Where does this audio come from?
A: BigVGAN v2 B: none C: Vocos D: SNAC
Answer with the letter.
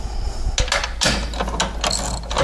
B